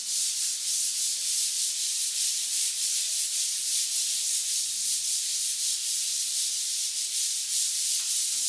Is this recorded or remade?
remade